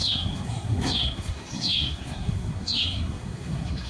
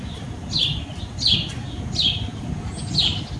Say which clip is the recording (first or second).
second